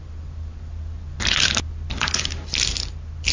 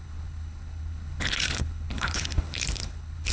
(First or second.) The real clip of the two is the first